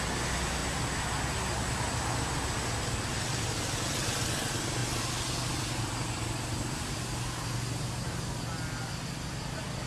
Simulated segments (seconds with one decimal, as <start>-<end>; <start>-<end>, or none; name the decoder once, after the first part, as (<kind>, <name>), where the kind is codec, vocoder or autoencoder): none